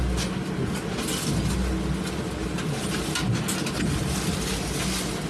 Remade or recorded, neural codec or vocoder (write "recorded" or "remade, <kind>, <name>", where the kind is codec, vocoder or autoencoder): recorded